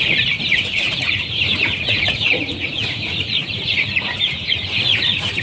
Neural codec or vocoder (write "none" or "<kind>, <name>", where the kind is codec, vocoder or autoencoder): vocoder, Vocos